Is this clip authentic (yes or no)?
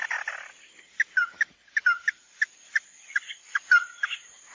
yes